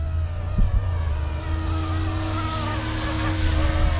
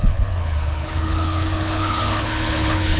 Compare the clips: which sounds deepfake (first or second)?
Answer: second